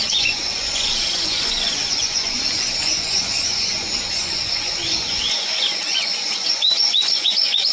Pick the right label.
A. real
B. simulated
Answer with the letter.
B